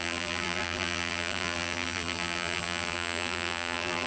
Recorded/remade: remade